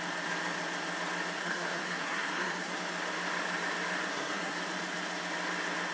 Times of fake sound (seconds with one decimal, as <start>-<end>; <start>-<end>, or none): 1.4-2.8; 4.1-4.6